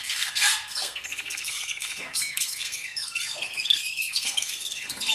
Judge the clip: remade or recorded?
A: remade